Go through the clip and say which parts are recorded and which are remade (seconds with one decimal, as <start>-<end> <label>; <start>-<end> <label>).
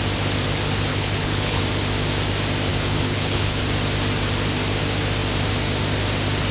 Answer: 0.0-0.9 recorded; 0.9-1.6 remade; 1.6-2.7 recorded; 2.7-3.6 remade; 3.6-6.5 recorded